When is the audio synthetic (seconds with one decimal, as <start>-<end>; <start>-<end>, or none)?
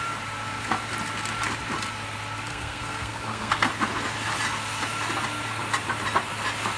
2.5-3.7